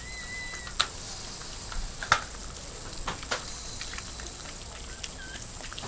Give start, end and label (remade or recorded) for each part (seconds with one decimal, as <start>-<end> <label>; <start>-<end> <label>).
0.0-5.9 recorded